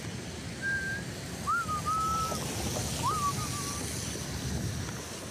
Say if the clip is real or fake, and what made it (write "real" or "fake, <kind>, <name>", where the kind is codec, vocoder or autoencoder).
real